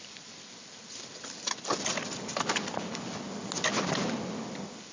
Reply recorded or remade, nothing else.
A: recorded